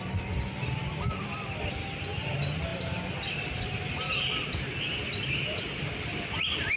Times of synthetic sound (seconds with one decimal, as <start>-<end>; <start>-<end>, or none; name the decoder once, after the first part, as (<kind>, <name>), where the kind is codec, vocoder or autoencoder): none